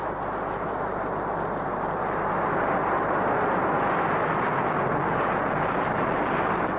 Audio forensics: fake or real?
real